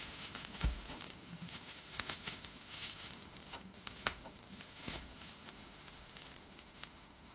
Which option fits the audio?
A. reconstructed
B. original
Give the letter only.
A